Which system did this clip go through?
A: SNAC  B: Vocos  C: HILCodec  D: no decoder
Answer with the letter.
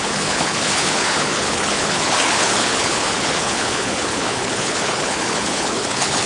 C